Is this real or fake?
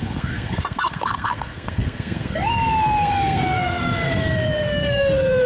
fake